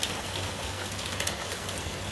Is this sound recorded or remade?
remade